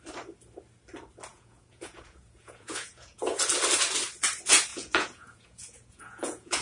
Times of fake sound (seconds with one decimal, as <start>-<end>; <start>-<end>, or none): 1.3-3.4; 4.7-6.6